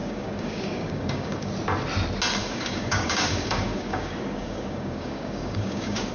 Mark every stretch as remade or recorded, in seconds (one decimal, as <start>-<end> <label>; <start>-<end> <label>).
0.0-1.5 remade; 1.5-2.4 recorded; 2.4-6.1 remade